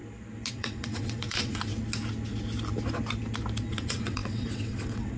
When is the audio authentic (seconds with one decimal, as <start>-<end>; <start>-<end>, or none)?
0.0-0.5; 1.7-3.7